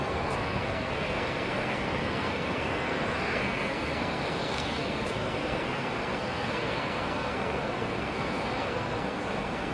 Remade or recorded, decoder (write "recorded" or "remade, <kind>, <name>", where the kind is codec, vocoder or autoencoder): remade, codec, SNAC